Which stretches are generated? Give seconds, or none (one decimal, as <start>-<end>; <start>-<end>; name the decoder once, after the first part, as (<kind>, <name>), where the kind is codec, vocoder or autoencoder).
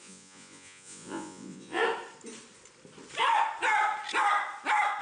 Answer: 0.0-1.8 (vocoder, Vocos)